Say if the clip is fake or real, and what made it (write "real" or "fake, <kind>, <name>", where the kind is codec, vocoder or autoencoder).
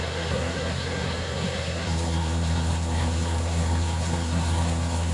fake, codec, SNAC